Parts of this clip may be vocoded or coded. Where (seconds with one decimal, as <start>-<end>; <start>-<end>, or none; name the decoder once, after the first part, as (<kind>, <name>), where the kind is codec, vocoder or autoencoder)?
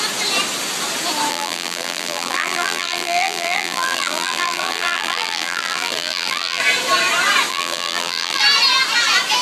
1.3-6.6 (vocoder, BigVGAN v2); 7.5-8.4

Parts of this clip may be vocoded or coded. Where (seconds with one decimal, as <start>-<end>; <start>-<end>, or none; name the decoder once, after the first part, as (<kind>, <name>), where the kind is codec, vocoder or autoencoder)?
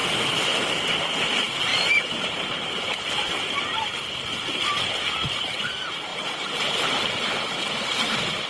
0.0-0.7 (vocoder, BigVGAN v2); 1.7-4.3; 6.1-7.2